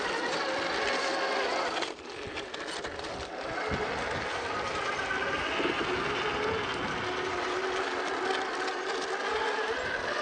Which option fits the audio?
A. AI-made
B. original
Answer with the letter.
B